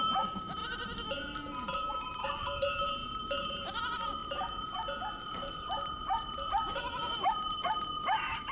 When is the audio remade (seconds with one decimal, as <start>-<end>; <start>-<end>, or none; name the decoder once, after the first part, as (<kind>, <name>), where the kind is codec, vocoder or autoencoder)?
0.0-8.5 (vocoder, BigVGAN v2)